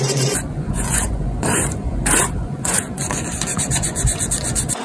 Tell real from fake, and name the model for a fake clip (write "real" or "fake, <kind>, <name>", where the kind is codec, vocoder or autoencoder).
fake, vocoder, Vocos